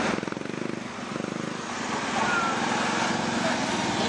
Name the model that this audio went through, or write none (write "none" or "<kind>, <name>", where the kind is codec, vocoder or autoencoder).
none